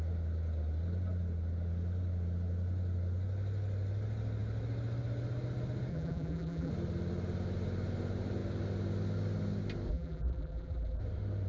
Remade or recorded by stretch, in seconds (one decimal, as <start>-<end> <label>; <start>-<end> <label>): 0.0-5.9 recorded; 5.9-6.7 remade; 6.7-9.9 recorded; 9.9-11.0 remade; 11.0-11.5 recorded